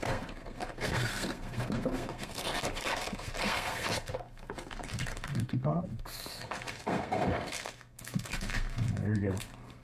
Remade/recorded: remade